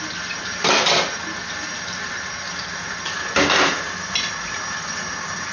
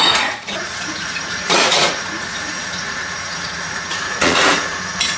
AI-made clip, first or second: second